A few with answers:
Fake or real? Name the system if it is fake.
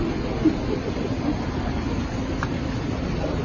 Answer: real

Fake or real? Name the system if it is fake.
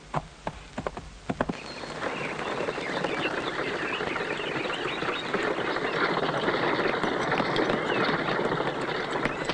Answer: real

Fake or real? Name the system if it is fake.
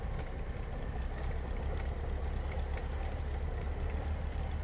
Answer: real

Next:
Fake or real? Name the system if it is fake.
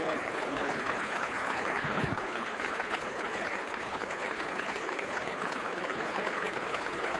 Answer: fake, codec, HILCodec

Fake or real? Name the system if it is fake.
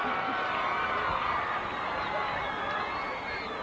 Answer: real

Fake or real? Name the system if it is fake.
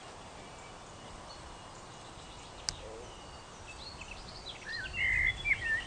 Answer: real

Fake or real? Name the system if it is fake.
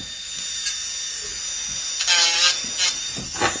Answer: real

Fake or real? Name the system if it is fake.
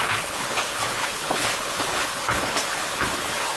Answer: fake, codec, HILCodec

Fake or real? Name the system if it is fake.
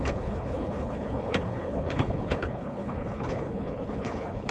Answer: fake, codec, HILCodec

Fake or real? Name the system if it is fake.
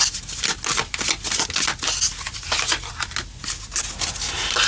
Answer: real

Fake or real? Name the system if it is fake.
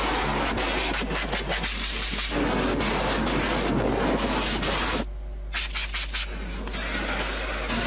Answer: real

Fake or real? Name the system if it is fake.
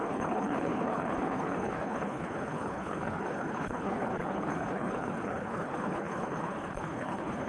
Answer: fake, codec, HILCodec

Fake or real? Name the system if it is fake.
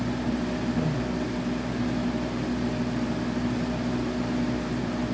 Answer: real